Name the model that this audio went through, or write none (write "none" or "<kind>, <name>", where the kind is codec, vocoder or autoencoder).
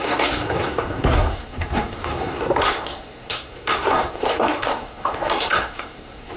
codec, SNAC